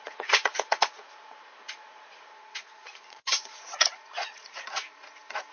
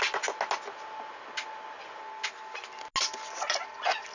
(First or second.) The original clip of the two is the second